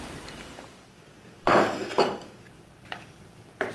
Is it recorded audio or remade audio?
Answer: remade